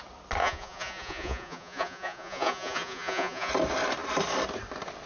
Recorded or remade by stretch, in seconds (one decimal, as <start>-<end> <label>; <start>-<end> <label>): 0.0-0.4 recorded; 0.4-3.5 remade; 3.5-5.1 recorded